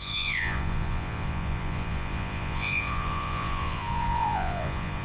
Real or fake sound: fake